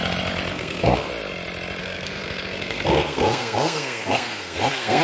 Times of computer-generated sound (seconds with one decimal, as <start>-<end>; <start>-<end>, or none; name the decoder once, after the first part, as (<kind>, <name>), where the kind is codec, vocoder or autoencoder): 0.5-1.1 (codec, SNAC); 1.8-5.0